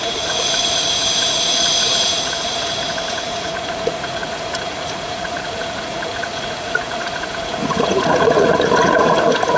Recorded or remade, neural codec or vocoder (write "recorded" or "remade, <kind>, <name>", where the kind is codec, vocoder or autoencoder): remade, vocoder, Vocos